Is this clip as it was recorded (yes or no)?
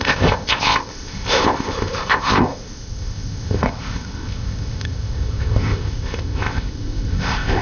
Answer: no